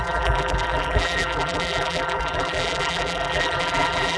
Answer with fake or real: fake